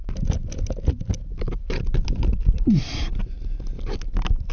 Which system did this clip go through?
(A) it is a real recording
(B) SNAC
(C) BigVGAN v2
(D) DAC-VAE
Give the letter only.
A